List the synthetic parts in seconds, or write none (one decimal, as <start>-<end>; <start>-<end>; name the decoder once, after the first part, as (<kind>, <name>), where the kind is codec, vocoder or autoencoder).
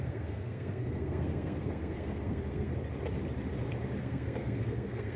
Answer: 0.0-2.7 (codec, SNAC); 4.0-5.2